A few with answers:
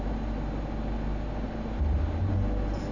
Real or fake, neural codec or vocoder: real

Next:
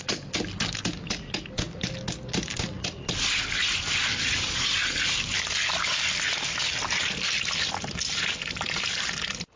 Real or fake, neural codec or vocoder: real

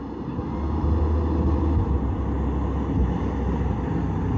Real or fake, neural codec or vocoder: real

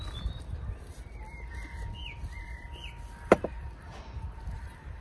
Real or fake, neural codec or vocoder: real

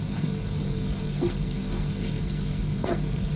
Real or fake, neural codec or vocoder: fake, codec, SNAC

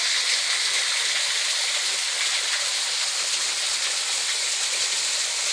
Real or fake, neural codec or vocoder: real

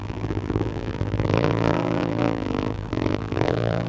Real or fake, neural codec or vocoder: fake, vocoder, BigVGAN v2